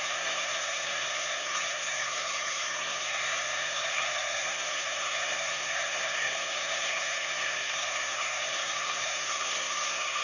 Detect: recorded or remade remade